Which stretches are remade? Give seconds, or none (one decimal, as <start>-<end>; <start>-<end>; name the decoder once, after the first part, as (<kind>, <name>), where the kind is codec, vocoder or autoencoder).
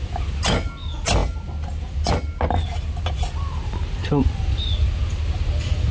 none